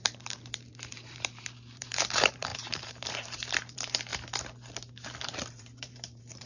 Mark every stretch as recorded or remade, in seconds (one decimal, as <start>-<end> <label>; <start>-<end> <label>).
0.0-4.1 remade; 4.1-5.4 recorded; 5.4-6.5 remade